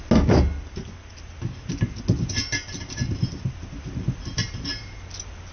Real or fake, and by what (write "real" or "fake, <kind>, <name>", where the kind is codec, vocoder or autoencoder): real